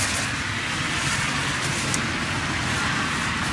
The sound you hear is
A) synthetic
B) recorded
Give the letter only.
B